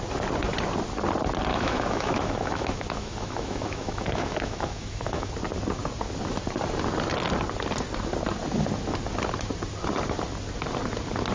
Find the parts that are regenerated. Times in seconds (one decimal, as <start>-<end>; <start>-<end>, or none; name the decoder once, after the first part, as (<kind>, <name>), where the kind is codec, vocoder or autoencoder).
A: 1.5-5.3 (autoencoder, DAC-VAE)